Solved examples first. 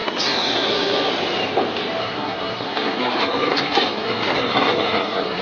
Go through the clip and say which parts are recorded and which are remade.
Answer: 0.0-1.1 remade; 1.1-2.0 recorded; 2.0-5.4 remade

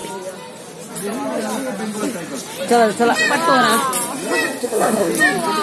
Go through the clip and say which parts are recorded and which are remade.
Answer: 0.0-4.6 recorded; 4.6-5.1 remade; 5.1-5.6 recorded

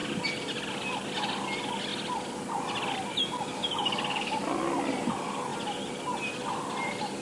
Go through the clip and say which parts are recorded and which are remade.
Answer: 0.0-7.2 recorded

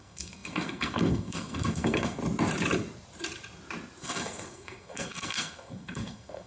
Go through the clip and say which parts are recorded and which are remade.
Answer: 0.0-2.2 remade; 2.2-4.0 recorded; 4.0-6.5 remade

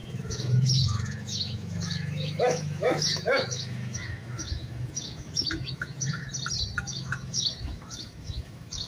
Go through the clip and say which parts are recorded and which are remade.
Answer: 0.0-6.3 remade; 6.3-6.8 recorded; 6.8-8.9 remade

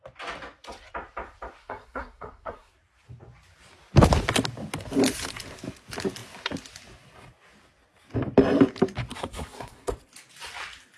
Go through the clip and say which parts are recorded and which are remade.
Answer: 0.0-1.6 recorded; 1.6-2.7 remade; 2.7-9.1 recorded; 9.1-9.9 remade; 9.9-11.0 recorded